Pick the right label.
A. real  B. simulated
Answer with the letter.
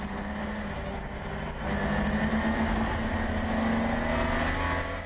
A